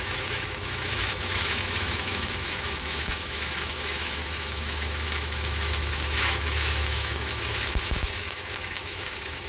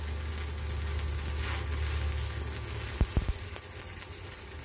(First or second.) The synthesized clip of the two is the first